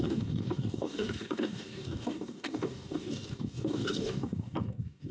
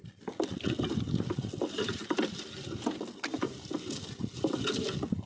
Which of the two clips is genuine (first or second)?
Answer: second